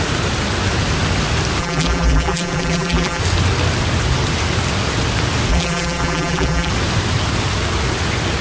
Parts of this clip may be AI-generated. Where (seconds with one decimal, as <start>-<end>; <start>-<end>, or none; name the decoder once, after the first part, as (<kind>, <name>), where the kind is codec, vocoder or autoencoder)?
1.6-3.2 (vocoder, BigVGAN v2); 5.5-6.7